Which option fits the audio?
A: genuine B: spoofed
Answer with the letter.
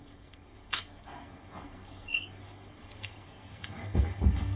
B